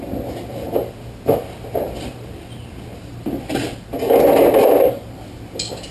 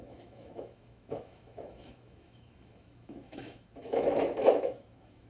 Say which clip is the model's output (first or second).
second